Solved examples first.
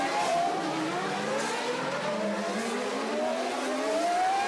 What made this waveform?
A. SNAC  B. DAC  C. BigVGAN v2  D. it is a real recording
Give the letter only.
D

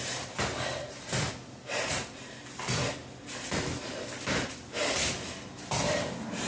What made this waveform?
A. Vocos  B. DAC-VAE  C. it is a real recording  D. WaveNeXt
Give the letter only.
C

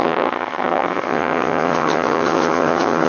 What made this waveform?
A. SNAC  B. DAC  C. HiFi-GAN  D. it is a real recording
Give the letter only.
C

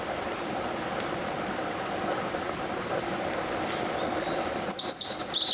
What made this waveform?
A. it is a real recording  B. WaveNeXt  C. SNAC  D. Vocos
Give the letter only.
A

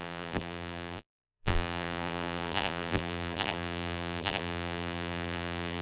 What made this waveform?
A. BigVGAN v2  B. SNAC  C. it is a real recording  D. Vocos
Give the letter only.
A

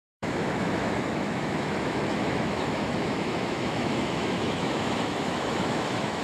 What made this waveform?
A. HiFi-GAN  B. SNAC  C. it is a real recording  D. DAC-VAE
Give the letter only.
D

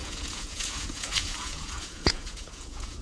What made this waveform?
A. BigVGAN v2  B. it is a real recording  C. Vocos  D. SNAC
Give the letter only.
C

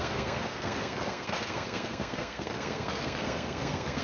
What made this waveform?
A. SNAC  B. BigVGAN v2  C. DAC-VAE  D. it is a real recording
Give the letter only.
A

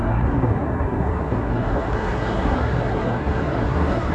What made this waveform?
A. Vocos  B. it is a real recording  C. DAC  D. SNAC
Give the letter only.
D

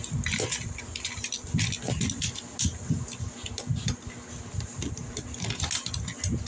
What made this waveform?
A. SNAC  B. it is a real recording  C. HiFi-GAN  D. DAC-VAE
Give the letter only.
B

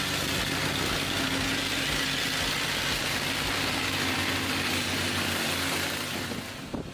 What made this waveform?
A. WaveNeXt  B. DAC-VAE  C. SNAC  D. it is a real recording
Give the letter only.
D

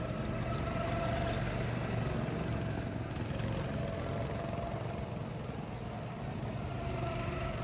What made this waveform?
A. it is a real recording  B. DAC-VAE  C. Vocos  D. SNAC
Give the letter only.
A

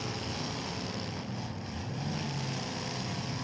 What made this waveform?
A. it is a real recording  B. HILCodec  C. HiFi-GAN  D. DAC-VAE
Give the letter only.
A